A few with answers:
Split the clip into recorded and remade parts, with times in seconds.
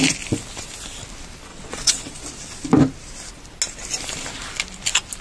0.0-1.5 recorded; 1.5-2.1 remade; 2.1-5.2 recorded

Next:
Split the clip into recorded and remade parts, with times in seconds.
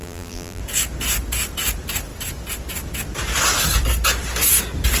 0.0-0.6 remade; 0.6-5.0 recorded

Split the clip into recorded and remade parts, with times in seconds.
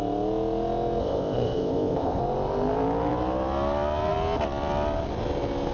0.0-1.0 recorded; 1.0-2.2 remade; 2.2-5.7 recorded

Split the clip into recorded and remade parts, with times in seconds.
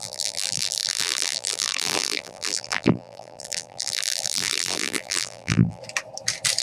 0.0-5.8 remade; 5.8-6.6 recorded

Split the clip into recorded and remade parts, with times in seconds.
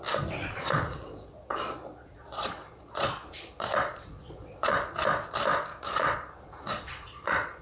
0.0-0.4 recorded; 0.4-4.9 remade; 4.9-5.7 recorded; 5.7-7.6 remade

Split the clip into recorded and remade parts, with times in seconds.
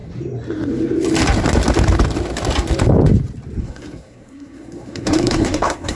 0.0-3.6 recorded; 3.6-6.0 remade